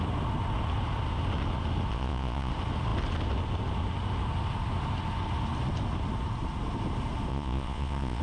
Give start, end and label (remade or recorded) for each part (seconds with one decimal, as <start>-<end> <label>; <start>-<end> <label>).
0.0-1.9 recorded; 1.9-2.5 remade; 2.5-7.3 recorded; 7.3-8.2 remade

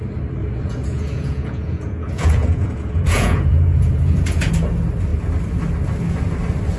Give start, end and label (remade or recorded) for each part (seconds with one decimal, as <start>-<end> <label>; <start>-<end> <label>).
0.0-0.4 recorded; 0.4-4.5 remade; 4.5-6.8 recorded

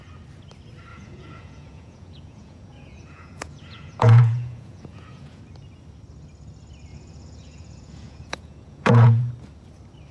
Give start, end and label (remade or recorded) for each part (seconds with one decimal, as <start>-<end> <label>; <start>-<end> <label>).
0.0-0.9 recorded; 0.9-5.4 remade; 5.4-6.9 recorded; 6.9-9.3 remade; 9.3-10.1 recorded

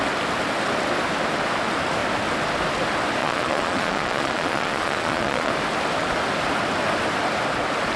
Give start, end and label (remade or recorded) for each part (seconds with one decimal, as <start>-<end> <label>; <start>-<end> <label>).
0.0-3.2 recorded; 3.2-5.5 remade; 5.5-8.0 recorded